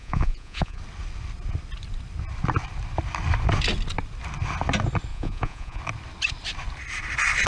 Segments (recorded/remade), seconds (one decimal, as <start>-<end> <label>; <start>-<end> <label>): 0.0-0.8 remade; 0.8-5.1 recorded; 5.1-5.8 remade; 5.8-7.5 recorded